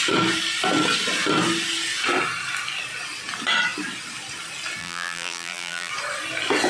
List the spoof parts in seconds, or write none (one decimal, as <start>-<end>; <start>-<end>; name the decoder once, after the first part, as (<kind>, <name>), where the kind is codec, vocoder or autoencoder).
4.8-5.9 (vocoder, BigVGAN v2)

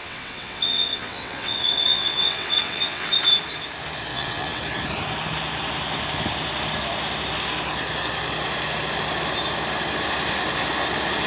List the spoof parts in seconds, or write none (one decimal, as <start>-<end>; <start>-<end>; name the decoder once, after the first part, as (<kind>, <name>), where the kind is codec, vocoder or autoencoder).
0.0-3.1 (vocoder, WaveNeXt); 4.1-4.6

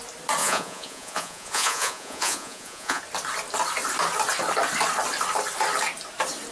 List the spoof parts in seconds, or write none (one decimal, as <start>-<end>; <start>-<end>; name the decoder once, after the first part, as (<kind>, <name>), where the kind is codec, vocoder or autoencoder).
0.4-3.0 (vocoder, Vocos)

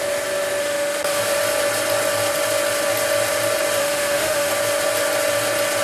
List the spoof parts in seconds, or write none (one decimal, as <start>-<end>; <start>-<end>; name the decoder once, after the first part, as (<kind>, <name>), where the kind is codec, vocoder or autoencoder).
0.6-1.2 (autoencoder, DAC-VAE); 3.8-4.5

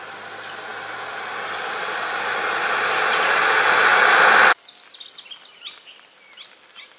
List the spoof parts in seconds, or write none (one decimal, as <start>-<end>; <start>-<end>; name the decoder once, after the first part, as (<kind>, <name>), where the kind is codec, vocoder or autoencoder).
none